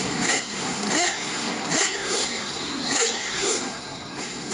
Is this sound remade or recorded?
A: remade